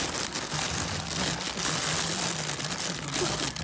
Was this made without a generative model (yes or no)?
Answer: yes